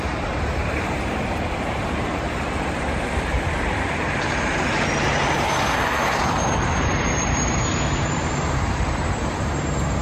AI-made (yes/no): yes